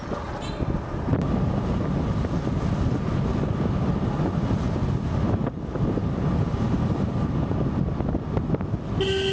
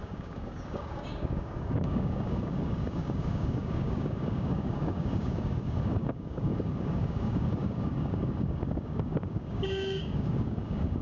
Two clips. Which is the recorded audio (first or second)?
first